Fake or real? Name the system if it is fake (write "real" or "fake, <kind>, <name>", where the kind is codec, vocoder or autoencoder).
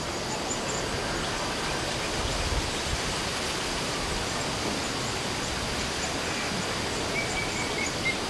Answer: real